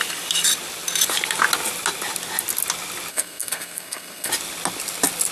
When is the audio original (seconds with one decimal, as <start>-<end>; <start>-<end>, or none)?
0.0-3.1; 4.3-5.3